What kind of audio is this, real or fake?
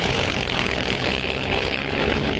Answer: fake